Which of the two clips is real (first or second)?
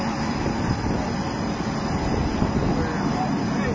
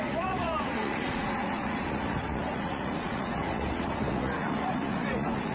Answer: first